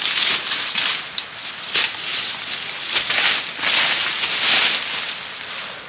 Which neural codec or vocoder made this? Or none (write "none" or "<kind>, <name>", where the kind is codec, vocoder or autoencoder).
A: none